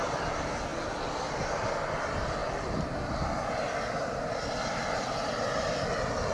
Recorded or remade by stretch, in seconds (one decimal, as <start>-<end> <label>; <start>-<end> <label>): 0.0-6.3 recorded

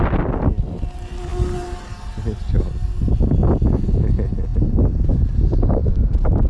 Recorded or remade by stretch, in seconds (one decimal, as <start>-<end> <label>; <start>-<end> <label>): 0.0-6.5 recorded